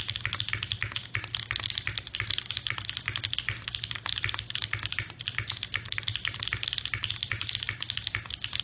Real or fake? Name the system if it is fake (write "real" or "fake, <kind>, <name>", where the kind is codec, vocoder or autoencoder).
real